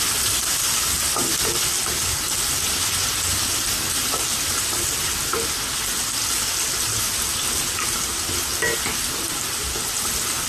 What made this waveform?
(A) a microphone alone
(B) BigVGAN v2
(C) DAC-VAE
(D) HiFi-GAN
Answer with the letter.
A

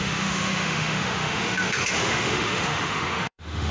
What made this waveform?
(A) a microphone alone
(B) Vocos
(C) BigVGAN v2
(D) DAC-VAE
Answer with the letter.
D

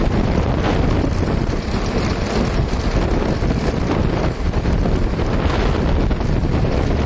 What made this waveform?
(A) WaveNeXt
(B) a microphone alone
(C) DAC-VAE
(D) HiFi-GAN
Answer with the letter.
B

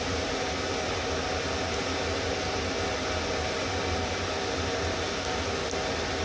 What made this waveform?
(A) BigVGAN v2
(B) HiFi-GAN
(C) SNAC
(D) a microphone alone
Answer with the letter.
D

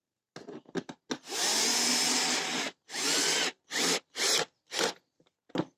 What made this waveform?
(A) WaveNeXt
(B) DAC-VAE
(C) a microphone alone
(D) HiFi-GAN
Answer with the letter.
C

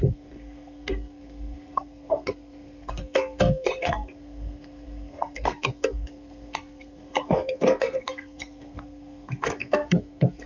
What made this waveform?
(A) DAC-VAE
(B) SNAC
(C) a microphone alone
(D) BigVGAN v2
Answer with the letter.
B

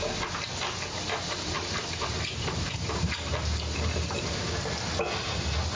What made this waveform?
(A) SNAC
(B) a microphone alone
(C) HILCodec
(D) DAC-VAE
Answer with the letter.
B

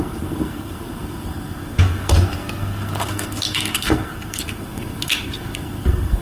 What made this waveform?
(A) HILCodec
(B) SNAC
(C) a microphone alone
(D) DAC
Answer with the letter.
B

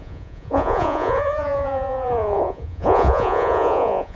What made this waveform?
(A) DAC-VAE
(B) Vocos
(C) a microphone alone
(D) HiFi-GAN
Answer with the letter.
B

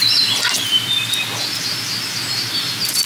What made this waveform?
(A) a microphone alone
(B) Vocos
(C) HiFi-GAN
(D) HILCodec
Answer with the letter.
A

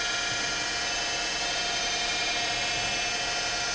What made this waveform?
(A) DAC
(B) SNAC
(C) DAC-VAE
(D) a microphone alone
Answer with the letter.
D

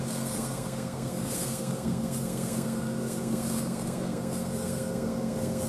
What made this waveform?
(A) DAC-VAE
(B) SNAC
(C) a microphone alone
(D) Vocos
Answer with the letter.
B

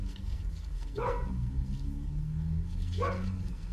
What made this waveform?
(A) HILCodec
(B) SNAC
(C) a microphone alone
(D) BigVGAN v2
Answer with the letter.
B